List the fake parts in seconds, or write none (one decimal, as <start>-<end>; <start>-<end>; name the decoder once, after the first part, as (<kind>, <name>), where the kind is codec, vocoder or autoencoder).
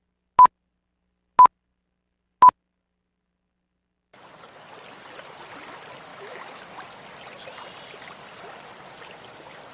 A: 6.1-6.6 (autoencoder, DAC-VAE)